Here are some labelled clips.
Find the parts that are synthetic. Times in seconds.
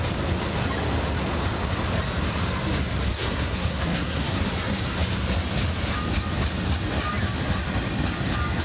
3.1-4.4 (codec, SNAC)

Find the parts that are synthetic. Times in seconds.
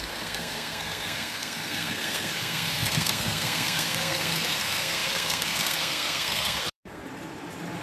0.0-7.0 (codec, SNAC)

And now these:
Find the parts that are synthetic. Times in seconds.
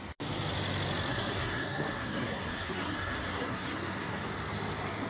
1.1-4.2 (codec, SNAC)